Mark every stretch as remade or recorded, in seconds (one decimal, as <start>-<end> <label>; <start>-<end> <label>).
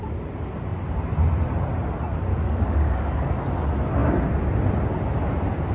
0.0-2.3 recorded; 2.3-3.4 remade; 3.4-5.7 recorded